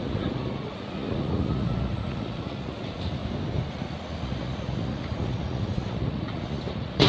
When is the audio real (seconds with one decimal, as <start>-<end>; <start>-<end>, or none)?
3.2-3.7